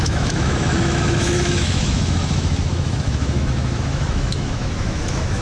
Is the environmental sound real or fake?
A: fake